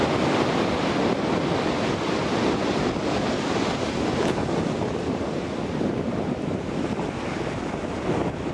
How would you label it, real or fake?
real